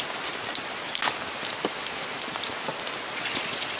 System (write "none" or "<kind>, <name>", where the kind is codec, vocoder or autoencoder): none